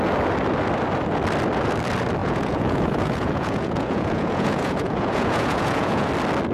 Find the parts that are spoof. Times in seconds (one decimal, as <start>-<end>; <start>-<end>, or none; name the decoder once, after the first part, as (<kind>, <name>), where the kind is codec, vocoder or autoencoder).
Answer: 2.2-6.1 (vocoder, Vocos)